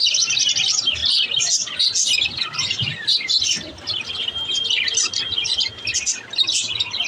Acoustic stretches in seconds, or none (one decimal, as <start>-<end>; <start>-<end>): 0.0-7.1